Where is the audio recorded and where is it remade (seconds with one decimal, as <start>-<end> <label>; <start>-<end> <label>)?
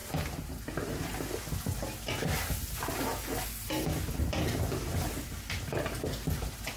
0.0-1.0 remade; 1.0-6.8 recorded